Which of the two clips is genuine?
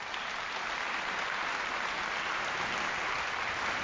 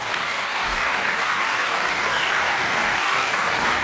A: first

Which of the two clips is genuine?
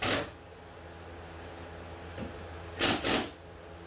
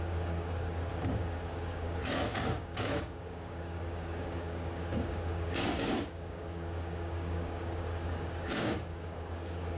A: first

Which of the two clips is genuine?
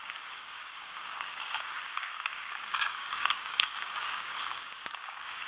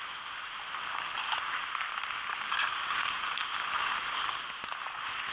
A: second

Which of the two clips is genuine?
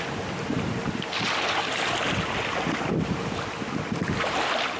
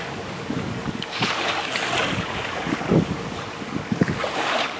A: first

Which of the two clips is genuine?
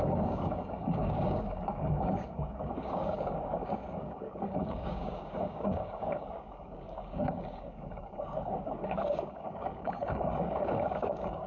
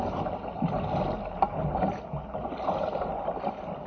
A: second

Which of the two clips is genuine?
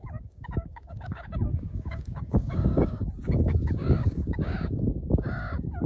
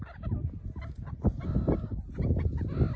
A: second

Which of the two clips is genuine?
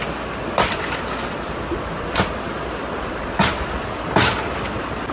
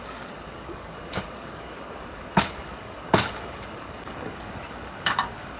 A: first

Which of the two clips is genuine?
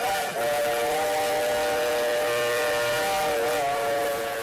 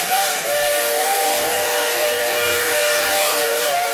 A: first